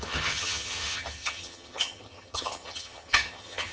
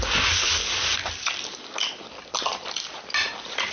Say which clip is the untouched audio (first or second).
second